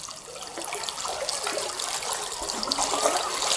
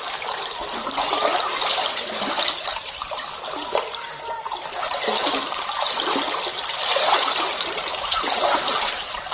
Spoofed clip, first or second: second